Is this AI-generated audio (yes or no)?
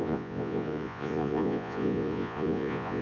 yes